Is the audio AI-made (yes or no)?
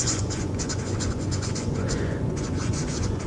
yes